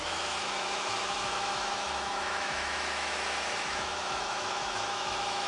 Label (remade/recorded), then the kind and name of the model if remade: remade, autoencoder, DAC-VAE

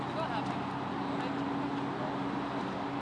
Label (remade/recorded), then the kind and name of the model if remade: recorded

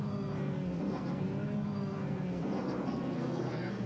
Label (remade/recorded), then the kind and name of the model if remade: remade, codec, SNAC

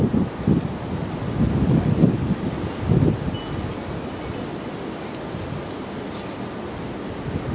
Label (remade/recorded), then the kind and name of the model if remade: recorded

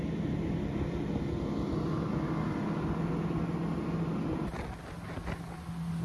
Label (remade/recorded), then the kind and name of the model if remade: recorded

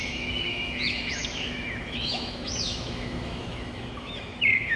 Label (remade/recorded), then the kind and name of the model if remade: remade, autoencoder, DAC-VAE